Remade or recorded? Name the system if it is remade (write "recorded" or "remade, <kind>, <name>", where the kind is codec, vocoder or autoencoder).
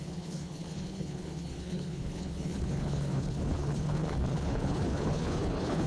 remade, codec, HILCodec